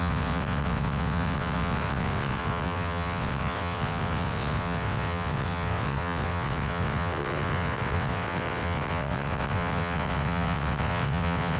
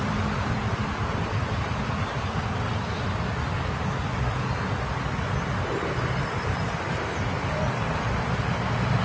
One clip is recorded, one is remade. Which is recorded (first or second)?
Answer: second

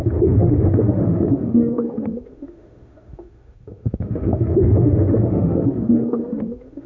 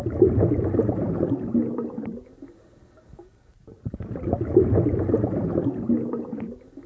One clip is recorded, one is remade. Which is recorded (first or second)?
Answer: second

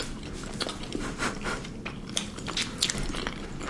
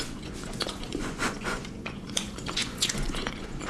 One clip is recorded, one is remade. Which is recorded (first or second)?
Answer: first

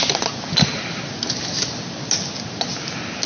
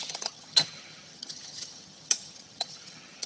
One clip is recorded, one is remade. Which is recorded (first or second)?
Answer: first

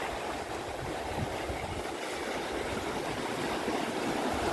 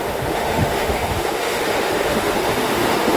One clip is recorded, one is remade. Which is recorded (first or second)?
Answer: first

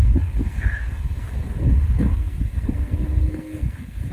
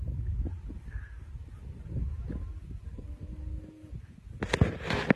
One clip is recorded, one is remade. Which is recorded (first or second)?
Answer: second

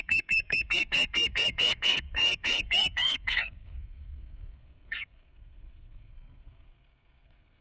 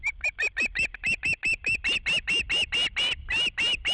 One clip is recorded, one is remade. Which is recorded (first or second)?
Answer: second